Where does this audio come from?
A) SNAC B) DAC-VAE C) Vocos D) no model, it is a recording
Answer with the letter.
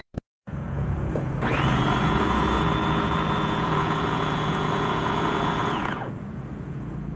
C